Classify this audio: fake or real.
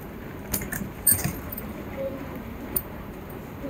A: fake